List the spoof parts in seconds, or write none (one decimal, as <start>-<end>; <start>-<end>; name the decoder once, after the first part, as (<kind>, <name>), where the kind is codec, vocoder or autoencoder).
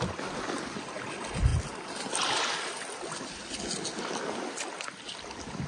none